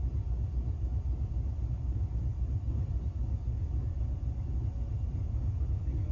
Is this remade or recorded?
recorded